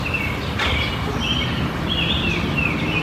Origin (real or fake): real